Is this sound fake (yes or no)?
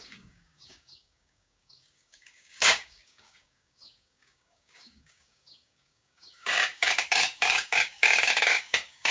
yes